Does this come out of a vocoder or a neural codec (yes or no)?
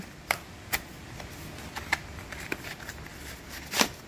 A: no